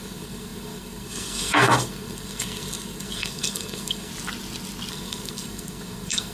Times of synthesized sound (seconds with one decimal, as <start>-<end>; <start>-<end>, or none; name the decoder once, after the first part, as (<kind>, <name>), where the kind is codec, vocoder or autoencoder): 0.0-4.1 (codec, SNAC); 4.9-6.3